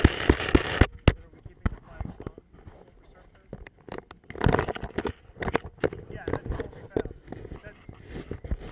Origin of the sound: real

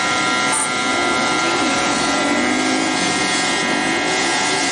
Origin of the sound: real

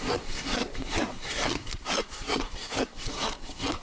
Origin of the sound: fake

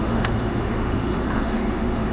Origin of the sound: fake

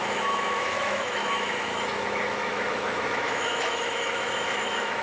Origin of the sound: fake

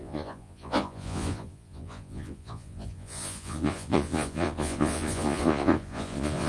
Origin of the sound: fake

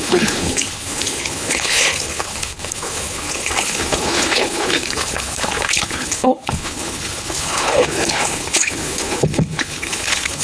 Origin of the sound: fake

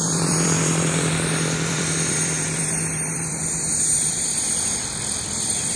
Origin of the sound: fake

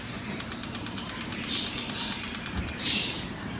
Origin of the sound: fake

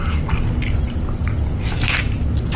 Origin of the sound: real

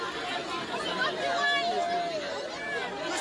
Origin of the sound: real